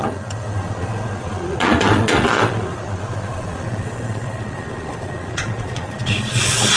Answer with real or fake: fake